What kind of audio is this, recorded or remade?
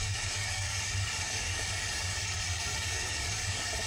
remade